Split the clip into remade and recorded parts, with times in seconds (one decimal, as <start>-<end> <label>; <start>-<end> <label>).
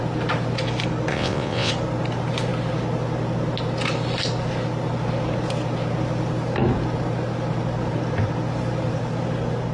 0.0-1.1 recorded; 1.1-1.7 remade; 1.7-9.7 recorded